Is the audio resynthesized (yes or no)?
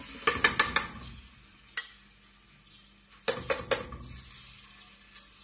no